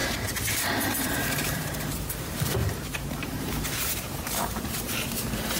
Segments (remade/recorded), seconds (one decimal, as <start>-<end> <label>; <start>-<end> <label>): 0.0-1.1 recorded; 1.1-5.6 remade